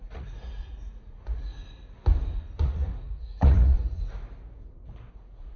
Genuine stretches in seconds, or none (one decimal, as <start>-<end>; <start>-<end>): 1.5-2.6; 4.0-5.1